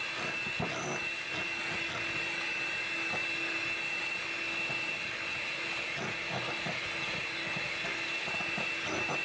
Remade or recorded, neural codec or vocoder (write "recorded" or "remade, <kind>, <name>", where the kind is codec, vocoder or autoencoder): recorded